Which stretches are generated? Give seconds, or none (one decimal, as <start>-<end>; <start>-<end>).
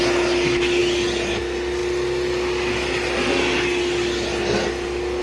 none